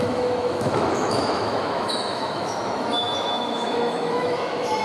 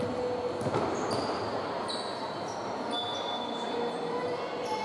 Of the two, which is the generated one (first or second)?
first